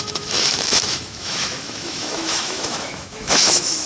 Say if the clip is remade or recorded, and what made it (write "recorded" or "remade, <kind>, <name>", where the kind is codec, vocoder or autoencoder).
remade, autoencoder, DAC-VAE